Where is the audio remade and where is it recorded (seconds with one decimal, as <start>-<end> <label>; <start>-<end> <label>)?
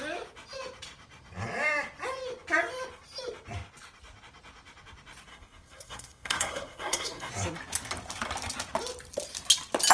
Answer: 0.0-5.3 recorded; 5.3-7.3 remade; 7.3-9.9 recorded